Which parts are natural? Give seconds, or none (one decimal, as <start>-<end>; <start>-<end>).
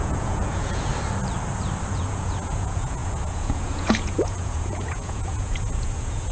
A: 0.9-1.9